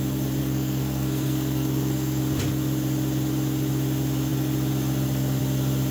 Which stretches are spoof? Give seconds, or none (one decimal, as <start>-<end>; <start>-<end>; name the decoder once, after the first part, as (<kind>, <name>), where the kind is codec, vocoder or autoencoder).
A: 0.4-2.2 (codec, SNAC)